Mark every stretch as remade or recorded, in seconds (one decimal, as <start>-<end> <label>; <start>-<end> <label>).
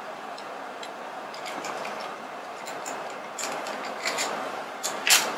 0.0-5.4 remade